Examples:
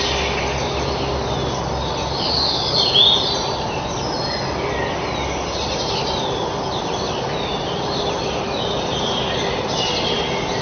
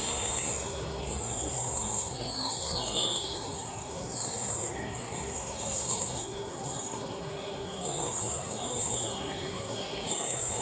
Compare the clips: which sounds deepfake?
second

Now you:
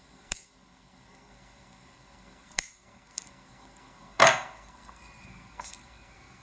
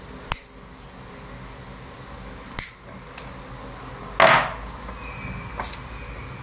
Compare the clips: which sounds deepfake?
first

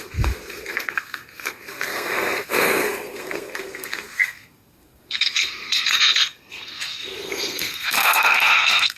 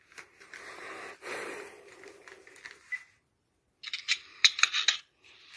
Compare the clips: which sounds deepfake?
first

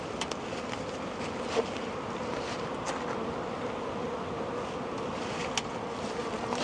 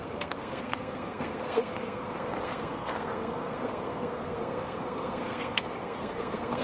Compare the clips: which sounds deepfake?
second